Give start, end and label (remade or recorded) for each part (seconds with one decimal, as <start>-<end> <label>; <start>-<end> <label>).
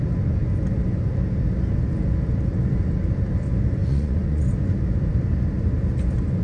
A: 0.0-3.8 recorded; 3.8-4.5 remade; 4.5-6.4 recorded